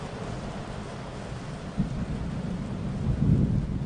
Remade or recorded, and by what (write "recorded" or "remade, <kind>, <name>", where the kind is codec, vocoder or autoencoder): recorded